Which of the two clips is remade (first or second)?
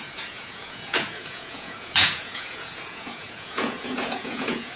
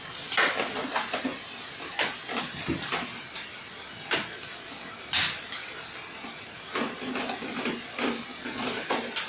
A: first